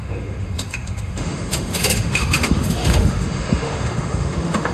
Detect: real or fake fake